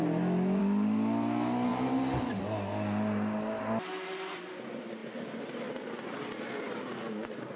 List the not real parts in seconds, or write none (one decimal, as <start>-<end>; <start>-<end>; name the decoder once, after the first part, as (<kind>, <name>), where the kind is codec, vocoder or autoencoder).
1.7-2.4 (vocoder, BigVGAN v2)